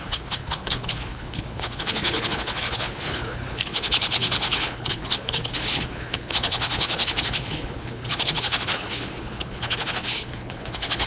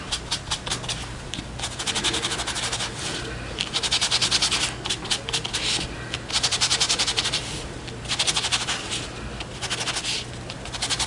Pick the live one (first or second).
second